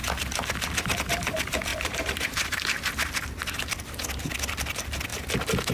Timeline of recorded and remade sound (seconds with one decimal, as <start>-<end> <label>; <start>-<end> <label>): 0.0-0.5 remade; 0.5-1.7 recorded; 1.7-2.9 remade; 2.9-5.7 recorded